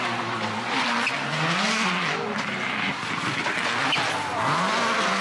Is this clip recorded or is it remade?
recorded